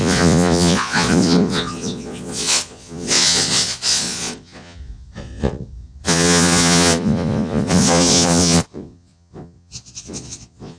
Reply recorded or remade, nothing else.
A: remade